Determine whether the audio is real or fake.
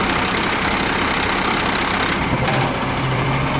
fake